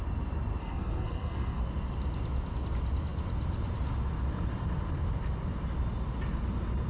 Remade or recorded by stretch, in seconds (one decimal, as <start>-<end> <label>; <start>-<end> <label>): 0.0-0.6 recorded; 0.6-1.6 remade; 1.6-6.9 recorded